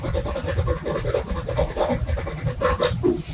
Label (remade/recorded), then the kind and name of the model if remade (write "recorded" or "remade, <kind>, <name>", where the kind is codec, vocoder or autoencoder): recorded